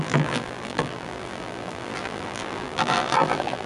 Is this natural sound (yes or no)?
no